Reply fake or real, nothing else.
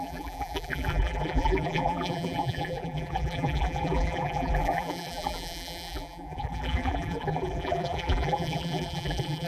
fake